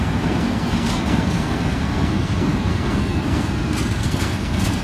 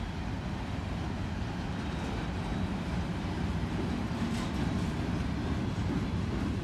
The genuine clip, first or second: second